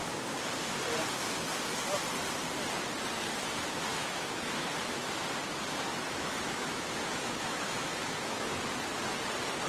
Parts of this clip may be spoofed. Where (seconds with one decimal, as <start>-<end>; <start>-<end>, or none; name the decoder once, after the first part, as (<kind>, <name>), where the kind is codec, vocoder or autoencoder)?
3.9-5.1 (autoencoder, DAC-VAE); 5.9-8.6